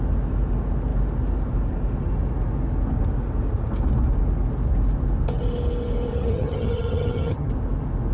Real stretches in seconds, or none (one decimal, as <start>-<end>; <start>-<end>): 0.0-6.1; 7.5-8.1